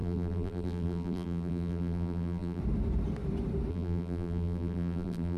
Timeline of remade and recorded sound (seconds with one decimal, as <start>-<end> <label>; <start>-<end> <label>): 0.0-2.6 remade; 2.6-3.7 recorded; 3.7-5.4 remade